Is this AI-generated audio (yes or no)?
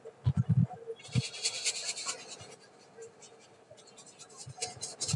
no